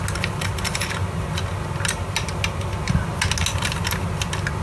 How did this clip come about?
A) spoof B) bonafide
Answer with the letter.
B